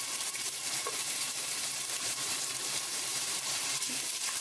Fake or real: fake